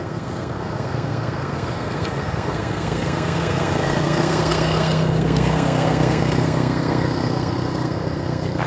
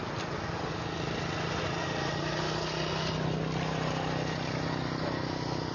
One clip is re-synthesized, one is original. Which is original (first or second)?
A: second